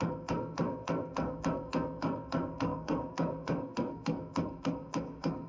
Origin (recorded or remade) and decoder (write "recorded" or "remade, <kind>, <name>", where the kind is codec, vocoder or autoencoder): remade, codec, SNAC